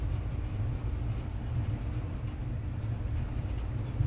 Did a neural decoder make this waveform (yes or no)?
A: no